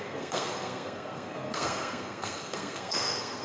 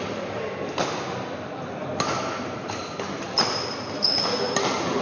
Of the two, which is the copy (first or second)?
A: first